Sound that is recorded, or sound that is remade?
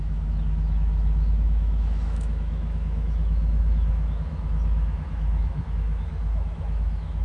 remade